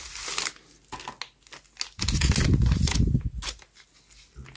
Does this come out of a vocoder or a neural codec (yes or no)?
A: no